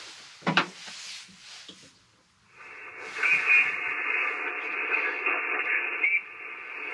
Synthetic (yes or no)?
no